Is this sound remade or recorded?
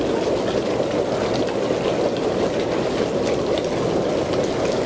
recorded